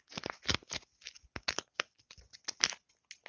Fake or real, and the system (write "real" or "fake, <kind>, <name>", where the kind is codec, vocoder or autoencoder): real